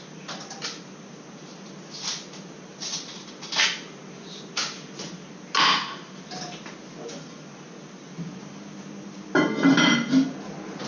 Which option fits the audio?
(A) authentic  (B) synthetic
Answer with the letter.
A